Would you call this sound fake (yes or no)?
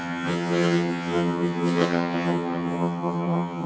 yes